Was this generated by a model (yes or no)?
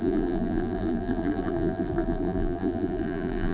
yes